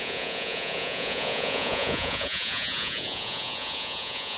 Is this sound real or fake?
fake